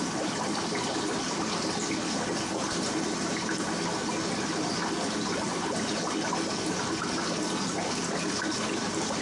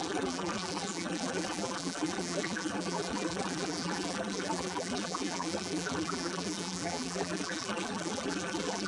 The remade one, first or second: second